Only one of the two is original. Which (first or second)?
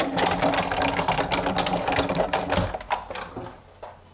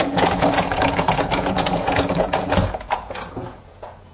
first